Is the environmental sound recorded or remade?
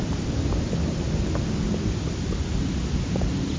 recorded